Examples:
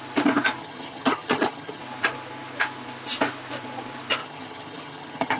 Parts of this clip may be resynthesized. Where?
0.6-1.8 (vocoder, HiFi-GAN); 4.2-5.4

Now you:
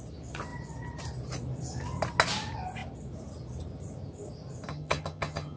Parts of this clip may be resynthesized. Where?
4.7-5.6 (vocoder, HiFi-GAN)